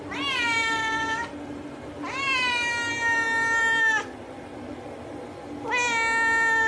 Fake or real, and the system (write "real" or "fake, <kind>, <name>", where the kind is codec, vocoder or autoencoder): real